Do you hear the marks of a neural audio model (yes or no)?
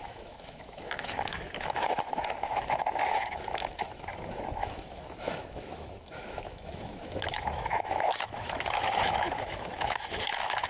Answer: yes